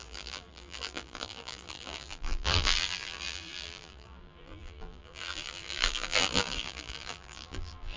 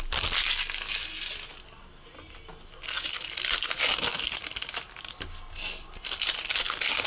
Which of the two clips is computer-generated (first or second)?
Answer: first